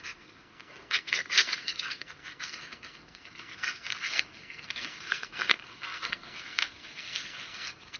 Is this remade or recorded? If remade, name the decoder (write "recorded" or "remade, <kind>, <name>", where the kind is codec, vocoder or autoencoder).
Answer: remade, codec, SNAC